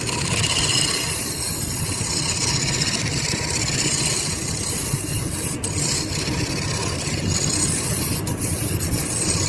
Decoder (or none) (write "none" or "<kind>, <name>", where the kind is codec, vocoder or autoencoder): none